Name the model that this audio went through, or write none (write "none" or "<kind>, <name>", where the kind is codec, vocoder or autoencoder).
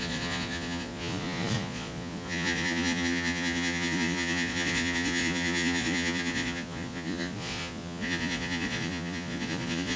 vocoder, Vocos